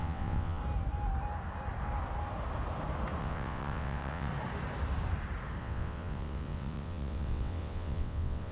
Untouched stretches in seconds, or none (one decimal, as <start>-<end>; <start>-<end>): 0.6-3.2; 4.3-5.6